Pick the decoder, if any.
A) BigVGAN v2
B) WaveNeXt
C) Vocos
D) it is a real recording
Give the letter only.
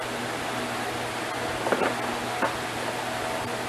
D